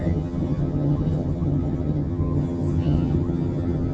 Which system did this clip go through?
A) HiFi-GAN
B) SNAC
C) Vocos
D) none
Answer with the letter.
A